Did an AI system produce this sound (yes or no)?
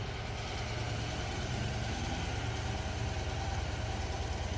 no